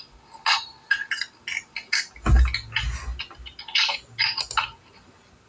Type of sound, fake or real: real